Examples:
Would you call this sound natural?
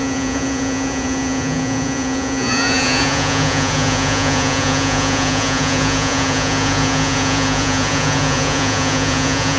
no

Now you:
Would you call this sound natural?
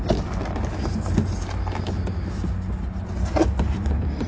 yes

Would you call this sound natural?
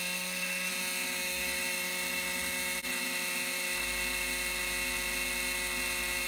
yes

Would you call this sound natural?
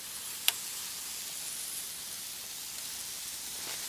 yes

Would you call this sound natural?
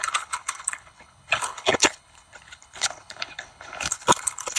no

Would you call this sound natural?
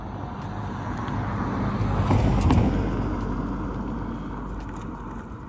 yes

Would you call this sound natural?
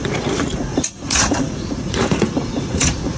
no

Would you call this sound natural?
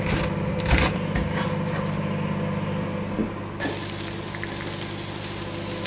yes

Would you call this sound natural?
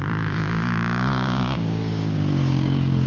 no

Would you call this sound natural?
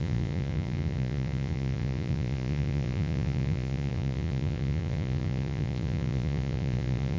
no